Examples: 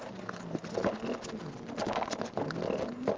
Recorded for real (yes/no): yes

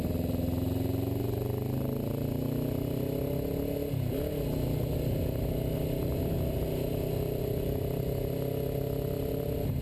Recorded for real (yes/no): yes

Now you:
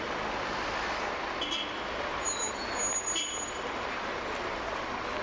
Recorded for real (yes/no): yes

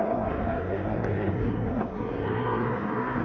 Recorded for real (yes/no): no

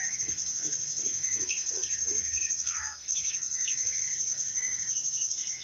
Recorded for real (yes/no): no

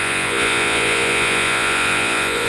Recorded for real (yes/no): no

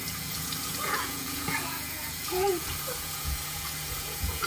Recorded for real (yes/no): no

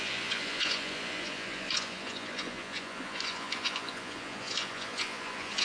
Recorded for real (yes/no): no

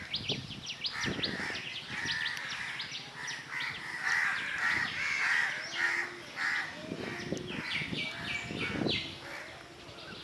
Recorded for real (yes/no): yes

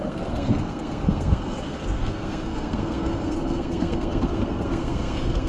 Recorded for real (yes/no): no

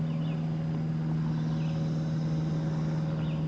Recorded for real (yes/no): yes